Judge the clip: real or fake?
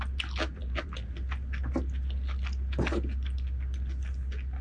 real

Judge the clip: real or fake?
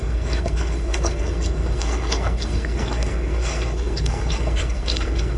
fake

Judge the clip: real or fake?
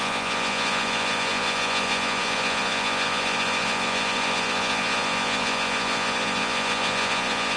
fake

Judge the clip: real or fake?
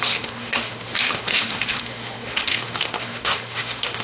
fake